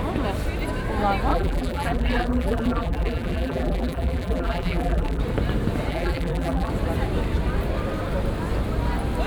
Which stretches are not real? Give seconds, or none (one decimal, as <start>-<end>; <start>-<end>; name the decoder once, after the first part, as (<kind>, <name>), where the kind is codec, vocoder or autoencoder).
1.3-5.2 (vocoder, BigVGAN v2); 5.9-6.7